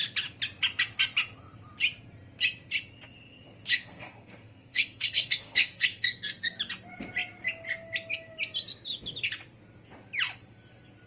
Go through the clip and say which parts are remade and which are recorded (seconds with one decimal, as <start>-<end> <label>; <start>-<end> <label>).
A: 0.0-3.7 recorded; 3.7-6.5 remade; 6.5-11.1 recorded